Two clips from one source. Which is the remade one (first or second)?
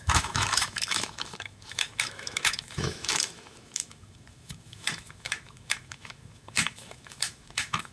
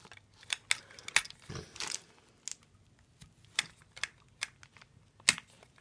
first